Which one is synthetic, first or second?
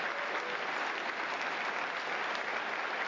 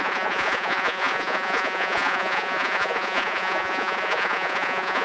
second